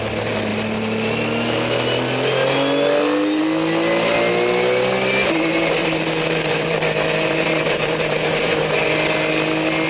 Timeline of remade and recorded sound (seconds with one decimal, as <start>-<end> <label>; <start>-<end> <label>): 0.0-5.8 recorded; 5.8-8.6 remade; 8.6-9.9 recorded